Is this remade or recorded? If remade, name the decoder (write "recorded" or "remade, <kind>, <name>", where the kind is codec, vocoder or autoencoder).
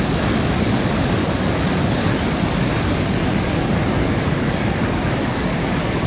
remade, codec, DAC